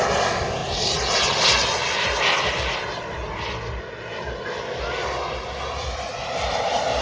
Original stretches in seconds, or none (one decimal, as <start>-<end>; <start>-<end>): 0.0-7.0